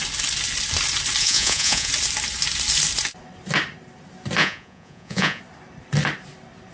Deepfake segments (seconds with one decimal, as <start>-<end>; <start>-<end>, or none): 1.2-1.9; 4.4-5.4